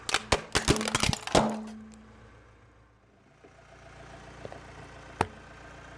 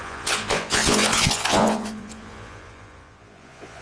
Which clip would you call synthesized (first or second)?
second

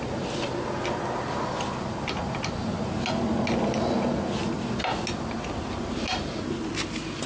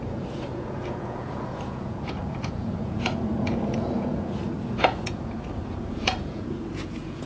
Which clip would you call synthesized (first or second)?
second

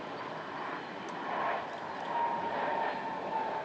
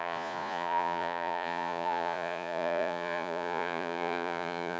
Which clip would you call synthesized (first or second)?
second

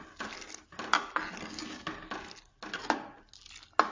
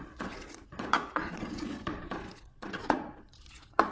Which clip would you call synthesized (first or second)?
second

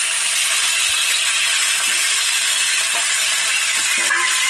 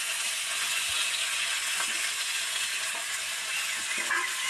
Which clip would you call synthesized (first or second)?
second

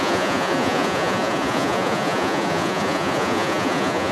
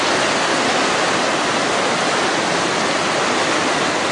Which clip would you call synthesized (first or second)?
first